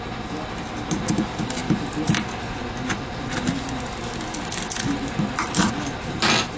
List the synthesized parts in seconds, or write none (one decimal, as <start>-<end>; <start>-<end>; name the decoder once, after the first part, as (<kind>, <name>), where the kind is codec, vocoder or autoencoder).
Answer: none